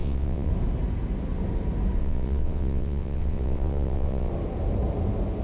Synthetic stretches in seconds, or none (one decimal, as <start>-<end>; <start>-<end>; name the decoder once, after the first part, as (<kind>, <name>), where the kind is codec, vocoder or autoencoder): 0.0-0.5 (vocoder, WaveNeXt); 2.0-4.3